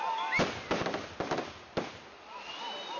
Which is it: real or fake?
real